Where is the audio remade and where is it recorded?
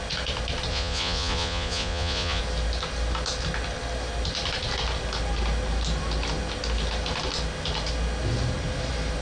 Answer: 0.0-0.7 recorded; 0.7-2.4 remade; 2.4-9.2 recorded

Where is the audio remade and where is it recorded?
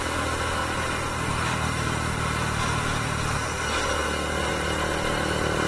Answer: 0.0-4.5 recorded; 4.5-5.7 remade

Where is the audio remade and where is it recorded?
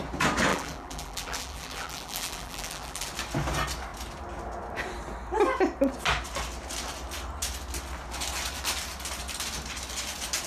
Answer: 0.0-0.5 recorded; 0.5-3.1 remade; 3.1-10.5 recorded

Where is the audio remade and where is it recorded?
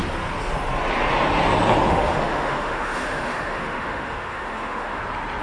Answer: 0.0-1.9 recorded; 1.9-5.0 remade; 5.0-5.4 recorded